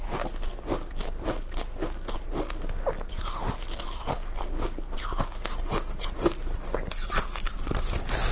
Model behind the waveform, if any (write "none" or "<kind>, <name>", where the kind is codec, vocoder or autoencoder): none